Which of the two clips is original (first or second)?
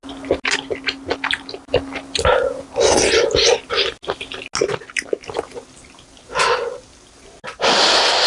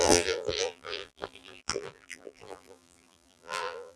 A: first